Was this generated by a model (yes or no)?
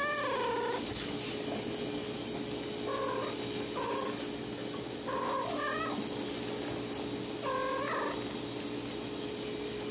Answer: no